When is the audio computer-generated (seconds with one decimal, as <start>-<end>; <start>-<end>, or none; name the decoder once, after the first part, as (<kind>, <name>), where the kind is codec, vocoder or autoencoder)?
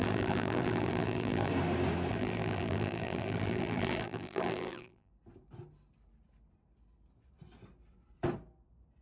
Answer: 0.0-1.5 (vocoder, BigVGAN v2); 2.1-5.1